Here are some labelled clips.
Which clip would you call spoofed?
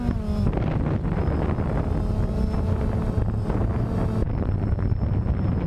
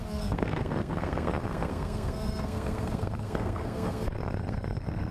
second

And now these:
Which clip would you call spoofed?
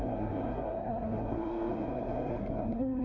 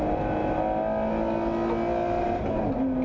first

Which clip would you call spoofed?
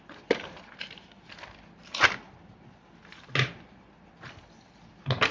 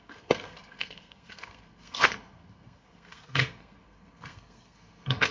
second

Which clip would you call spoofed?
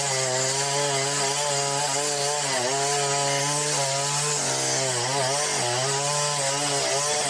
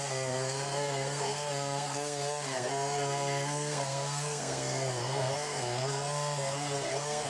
second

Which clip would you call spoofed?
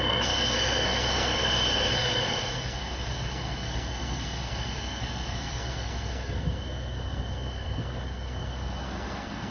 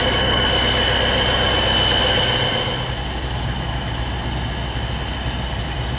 first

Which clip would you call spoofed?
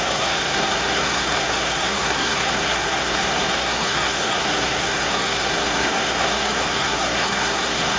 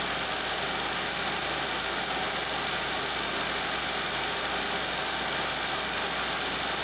first